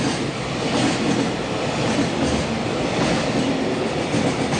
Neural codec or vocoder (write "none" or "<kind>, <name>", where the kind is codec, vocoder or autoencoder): none